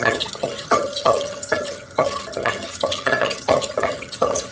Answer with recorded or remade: remade